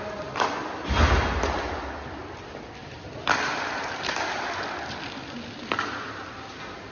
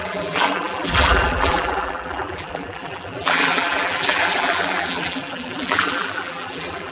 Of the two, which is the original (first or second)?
first